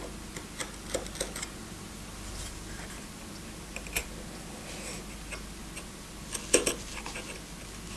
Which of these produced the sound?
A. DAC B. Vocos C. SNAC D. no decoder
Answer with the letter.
D